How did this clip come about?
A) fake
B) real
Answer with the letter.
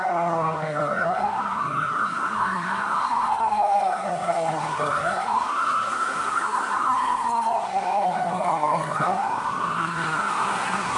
A